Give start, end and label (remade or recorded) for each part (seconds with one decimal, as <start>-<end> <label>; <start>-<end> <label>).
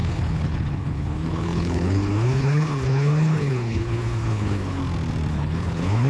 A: 0.0-4.8 remade; 4.8-5.3 recorded; 5.3-6.1 remade